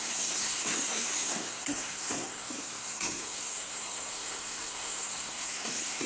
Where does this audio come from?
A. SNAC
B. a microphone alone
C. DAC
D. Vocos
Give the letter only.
A